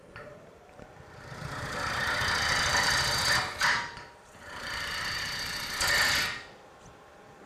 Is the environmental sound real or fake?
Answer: fake